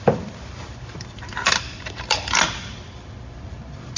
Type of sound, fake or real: fake